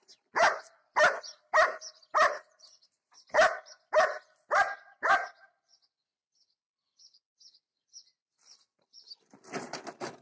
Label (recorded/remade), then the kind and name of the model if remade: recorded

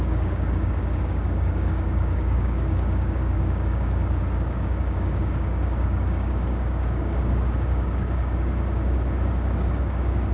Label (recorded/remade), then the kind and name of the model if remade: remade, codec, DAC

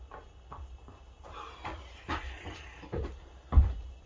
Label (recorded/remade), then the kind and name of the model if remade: recorded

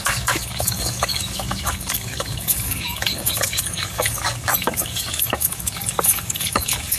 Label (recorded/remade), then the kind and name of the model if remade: remade, codec, DAC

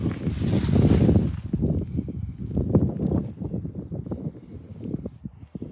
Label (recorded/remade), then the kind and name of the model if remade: recorded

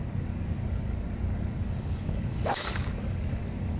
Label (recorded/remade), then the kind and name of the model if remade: remade, codec, DAC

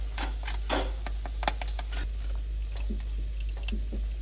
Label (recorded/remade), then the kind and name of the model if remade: recorded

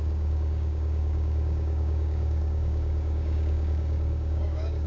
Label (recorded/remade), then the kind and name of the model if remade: remade, codec, DAC